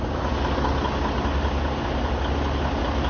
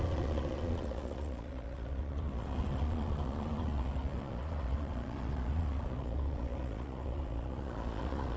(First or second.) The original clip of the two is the first